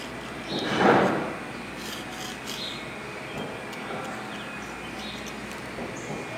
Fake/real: real